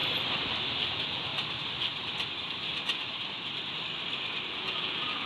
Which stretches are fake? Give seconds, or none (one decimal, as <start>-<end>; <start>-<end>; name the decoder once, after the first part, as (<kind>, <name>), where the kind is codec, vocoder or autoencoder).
0.9-1.3 (vocoder, Vocos); 4.5-5.3